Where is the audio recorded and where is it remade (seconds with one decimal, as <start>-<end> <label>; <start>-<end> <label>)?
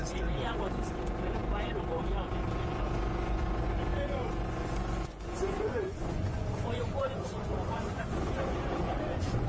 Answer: 0.0-9.5 remade